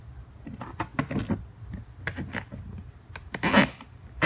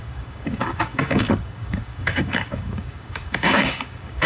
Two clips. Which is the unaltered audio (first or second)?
first